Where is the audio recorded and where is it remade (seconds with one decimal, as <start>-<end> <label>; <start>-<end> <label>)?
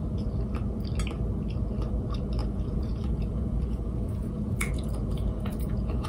0.0-2.4 recorded; 2.4-6.1 remade